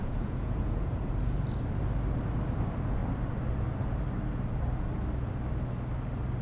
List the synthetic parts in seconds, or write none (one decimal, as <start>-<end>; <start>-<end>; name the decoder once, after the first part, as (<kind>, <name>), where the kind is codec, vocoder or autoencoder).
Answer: 0.0-1.2 (vocoder, Vocos)